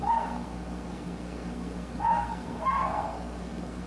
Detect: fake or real fake